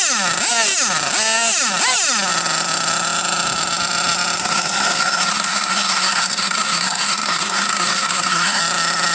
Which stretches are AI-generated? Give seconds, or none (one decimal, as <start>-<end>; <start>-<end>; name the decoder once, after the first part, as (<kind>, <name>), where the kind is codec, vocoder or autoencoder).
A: 4.4-8.6 (codec, SNAC)